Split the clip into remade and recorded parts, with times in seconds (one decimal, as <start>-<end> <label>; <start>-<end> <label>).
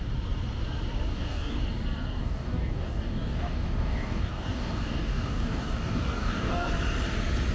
0.0-1.1 recorded; 1.1-1.6 remade; 1.6-2.2 recorded; 2.2-6.7 remade; 6.7-7.5 recorded